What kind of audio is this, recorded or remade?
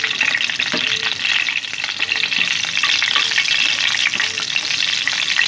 recorded